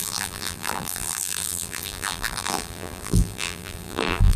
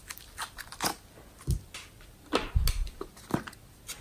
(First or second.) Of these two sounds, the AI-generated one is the first